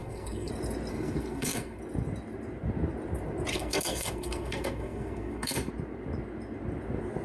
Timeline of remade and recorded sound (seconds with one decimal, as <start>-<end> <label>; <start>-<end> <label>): 0.0-0.5 remade; 0.5-0.9 recorded; 0.9-1.8 remade; 1.8-3.5 recorded; 3.5-5.7 remade; 5.7-7.2 recorded